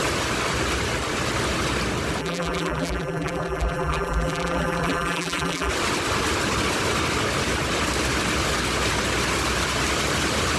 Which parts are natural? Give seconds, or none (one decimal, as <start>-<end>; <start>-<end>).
0.0-2.2; 5.7-10.6